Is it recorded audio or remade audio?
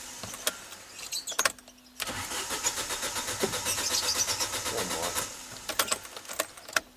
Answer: recorded